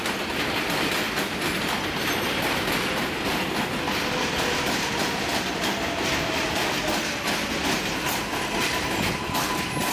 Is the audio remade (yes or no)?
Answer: no